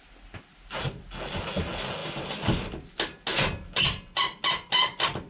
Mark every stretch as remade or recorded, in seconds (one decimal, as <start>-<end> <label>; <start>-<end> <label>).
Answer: 0.0-2.0 recorded; 2.0-2.6 remade; 2.6-5.3 recorded